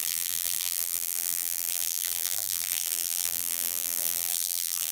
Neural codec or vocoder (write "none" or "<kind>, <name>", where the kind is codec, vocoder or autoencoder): vocoder, BigVGAN v2